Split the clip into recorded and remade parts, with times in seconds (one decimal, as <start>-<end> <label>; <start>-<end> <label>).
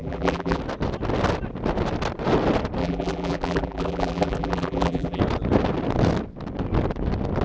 0.0-0.6 remade; 0.6-2.8 recorded; 2.8-5.2 remade; 5.2-7.4 recorded